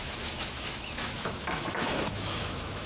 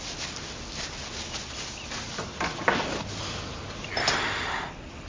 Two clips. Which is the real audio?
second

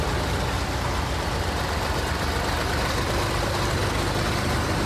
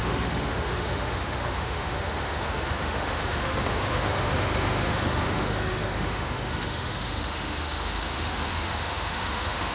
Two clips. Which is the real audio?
first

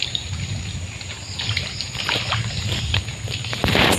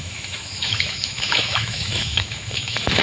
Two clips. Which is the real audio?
first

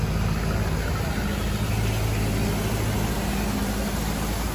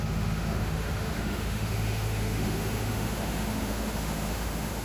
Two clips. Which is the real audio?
first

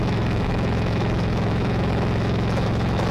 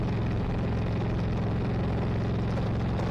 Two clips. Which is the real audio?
second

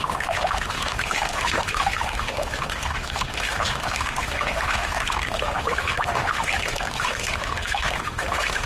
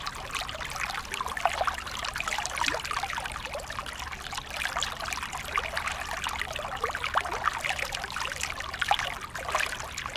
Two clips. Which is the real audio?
second